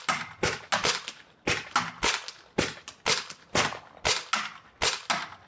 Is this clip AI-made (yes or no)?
no